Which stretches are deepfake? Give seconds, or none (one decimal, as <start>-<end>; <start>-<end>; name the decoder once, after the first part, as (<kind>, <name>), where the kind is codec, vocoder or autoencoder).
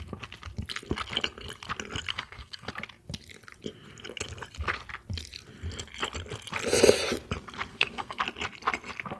2.1-2.7 (codec, SNAC); 7.7-8.2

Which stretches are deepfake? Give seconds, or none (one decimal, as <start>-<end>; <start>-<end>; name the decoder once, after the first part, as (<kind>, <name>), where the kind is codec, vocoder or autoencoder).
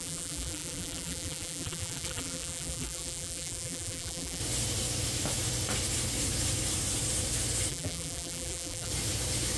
0.0-4.4 (vocoder, BigVGAN v2); 7.7-8.9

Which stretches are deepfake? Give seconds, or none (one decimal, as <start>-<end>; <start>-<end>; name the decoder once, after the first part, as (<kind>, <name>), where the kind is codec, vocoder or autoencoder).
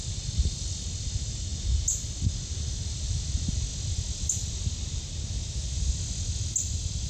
none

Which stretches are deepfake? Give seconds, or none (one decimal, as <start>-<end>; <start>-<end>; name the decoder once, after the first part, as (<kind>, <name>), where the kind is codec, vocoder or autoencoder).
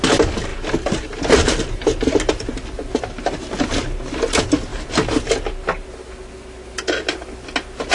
none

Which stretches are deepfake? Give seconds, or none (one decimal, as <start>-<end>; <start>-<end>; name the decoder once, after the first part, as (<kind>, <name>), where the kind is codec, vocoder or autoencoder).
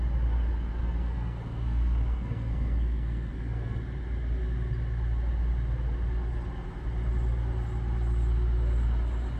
0.8-3.8 (codec, SNAC)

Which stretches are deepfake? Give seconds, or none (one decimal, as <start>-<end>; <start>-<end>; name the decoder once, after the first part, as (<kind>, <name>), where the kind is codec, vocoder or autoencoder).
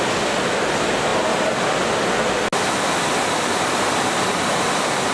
none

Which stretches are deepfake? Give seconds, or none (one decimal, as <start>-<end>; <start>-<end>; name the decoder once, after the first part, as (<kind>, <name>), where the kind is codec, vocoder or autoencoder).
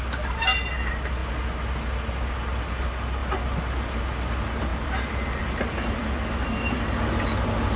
4.7-6.3 (vocoder, BigVGAN v2)